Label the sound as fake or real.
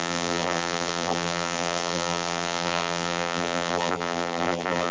fake